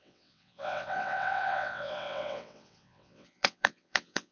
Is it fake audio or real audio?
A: fake